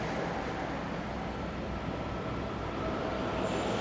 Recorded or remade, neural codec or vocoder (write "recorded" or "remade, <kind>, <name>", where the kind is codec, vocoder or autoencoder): recorded